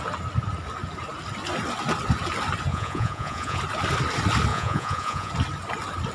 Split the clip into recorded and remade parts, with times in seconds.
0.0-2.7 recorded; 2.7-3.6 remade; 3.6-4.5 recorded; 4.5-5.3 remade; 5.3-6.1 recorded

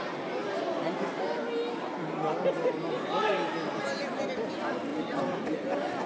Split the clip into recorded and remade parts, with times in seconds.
0.0-6.1 recorded